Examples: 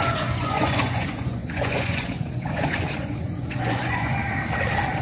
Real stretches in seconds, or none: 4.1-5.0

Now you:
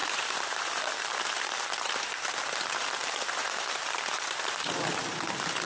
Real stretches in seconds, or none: 2.3-3.0; 5.0-5.7

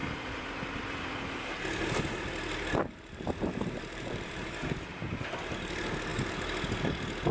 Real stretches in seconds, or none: 1.5-2.9; 5.3-7.3